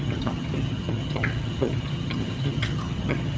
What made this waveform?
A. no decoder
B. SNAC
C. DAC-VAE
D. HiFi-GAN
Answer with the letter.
D